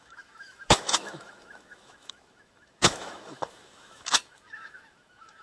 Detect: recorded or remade remade